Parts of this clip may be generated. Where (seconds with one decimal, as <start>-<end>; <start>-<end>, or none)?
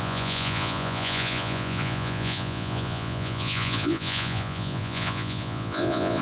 0.0-6.2